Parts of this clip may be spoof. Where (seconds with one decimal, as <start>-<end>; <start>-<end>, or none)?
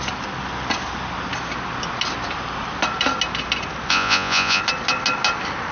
3.9-4.6